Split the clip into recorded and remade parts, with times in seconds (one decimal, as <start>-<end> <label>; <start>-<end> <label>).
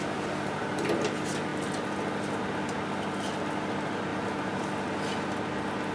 0.0-4.1 recorded; 4.1-4.7 remade; 4.7-5.9 recorded